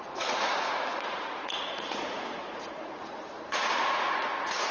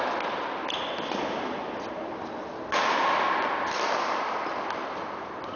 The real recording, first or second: second